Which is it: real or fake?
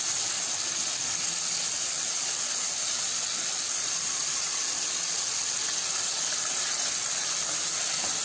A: real